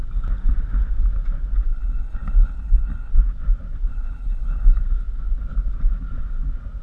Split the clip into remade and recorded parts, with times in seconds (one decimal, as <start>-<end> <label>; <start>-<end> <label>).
0.0-1.7 recorded; 1.7-3.1 remade; 3.1-3.9 recorded; 3.9-4.8 remade; 4.8-6.8 recorded